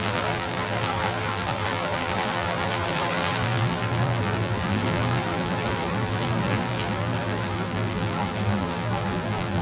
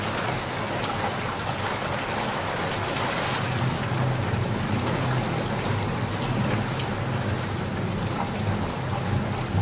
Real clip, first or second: second